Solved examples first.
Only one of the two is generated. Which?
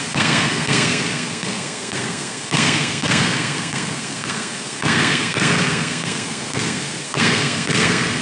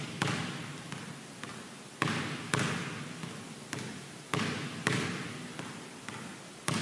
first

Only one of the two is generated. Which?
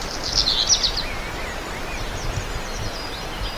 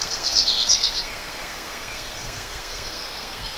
second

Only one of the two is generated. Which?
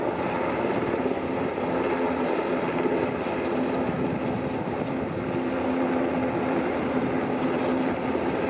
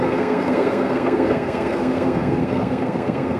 second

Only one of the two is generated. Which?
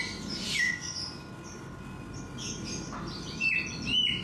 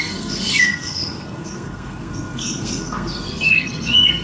second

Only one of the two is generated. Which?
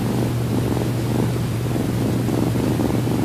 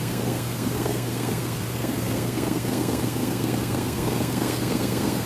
second